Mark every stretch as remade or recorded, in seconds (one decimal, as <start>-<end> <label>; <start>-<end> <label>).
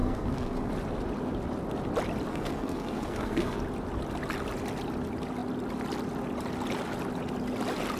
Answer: 0.0-0.7 remade; 0.7-2.3 recorded; 2.3-3.6 remade; 3.6-8.0 recorded